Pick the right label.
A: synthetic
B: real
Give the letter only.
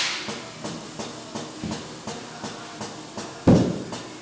B